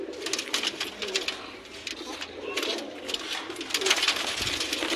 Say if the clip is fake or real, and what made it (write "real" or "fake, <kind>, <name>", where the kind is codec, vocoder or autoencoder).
real